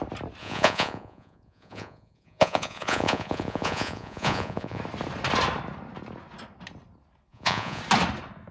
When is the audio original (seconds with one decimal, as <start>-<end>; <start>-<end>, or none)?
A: 0.0-0.4; 4.8-7.3; 7.8-8.5